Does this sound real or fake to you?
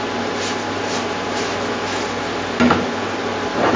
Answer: real